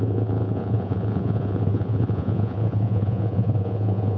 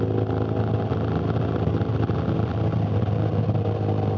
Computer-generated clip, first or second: first